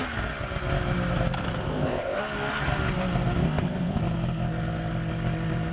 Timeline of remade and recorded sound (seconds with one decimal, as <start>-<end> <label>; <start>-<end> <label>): 0.0-1.6 recorded; 1.6-2.2 remade; 2.2-3.4 recorded; 3.4-4.0 remade; 4.0-5.7 recorded

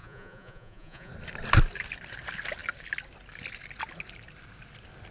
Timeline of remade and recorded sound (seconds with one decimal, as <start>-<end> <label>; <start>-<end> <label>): 0.0-1.1 remade; 1.1-5.1 recorded